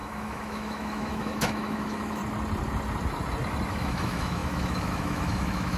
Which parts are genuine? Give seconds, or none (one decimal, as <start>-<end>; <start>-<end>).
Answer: 2.2-3.7